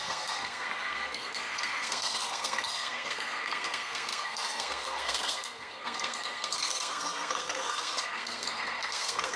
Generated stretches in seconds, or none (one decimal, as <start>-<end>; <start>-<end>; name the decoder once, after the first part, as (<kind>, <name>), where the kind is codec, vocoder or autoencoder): 0.0-9.4 (codec, SNAC)